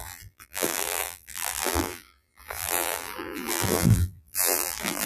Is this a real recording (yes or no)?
no